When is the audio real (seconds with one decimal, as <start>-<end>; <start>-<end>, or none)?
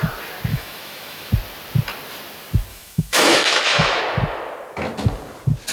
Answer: 0.0-0.5; 1.3-2.7; 4.0-5.7